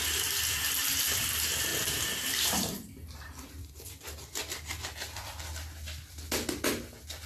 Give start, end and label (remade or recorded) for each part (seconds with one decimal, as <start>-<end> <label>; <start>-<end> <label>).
0.0-1.7 recorded; 1.7-3.6 remade; 3.6-7.3 recorded